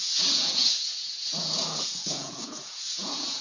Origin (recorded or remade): remade